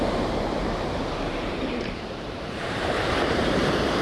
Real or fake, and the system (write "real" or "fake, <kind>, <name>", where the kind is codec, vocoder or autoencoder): fake, vocoder, BigVGAN v2